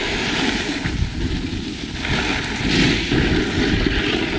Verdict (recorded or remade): recorded